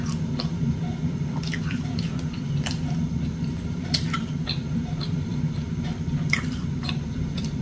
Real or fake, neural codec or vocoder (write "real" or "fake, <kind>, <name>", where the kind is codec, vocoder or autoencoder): fake, vocoder, BigVGAN v2